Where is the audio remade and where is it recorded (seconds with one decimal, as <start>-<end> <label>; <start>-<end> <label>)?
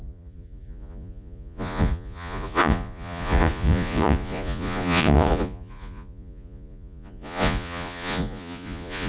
0.0-9.1 remade